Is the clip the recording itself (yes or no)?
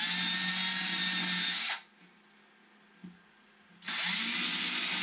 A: yes